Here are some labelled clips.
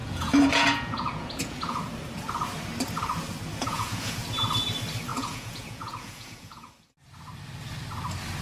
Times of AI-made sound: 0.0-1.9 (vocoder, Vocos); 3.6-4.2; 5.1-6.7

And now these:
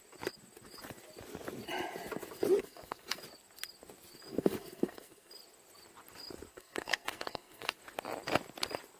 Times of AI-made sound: 2.6-3.2 (codec, SNAC); 4.3-5.3; 6.5-7.8

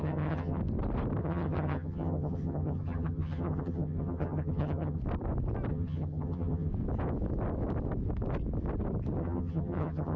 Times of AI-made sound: 0.0-0.6 (vocoder, HiFi-GAN); 1.2-5.0; 5.7-6.7; 9.2-10.2